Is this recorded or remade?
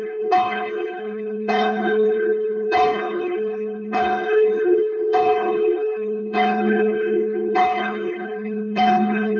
remade